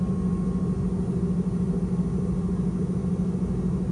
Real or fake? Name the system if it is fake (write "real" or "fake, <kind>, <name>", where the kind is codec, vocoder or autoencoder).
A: real